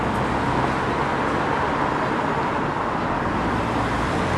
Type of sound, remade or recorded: recorded